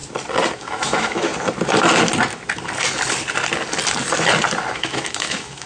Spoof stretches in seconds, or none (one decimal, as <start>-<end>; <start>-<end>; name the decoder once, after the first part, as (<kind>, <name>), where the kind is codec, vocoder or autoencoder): 0.5-1.3 (autoencoder, DAC-VAE); 4.7-5.7